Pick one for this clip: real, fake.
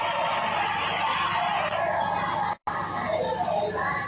real